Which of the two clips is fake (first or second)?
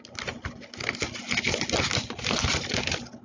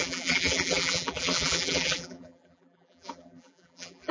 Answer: second